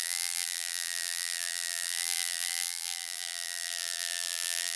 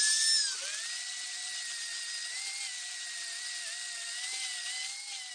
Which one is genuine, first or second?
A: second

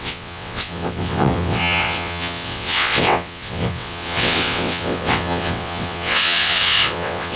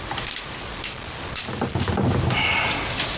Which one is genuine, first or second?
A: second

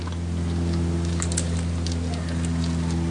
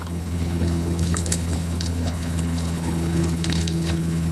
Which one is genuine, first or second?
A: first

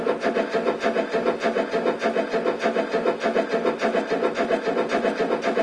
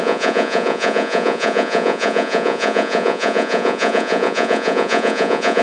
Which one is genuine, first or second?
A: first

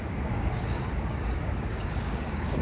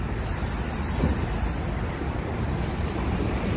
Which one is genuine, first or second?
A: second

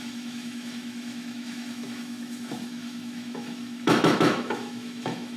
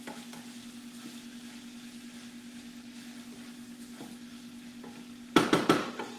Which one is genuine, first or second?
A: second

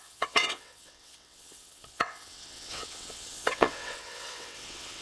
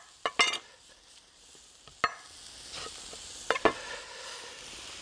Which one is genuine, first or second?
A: second